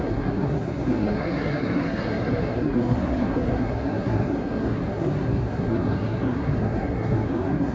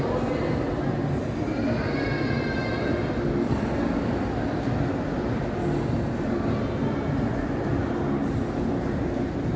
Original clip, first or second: second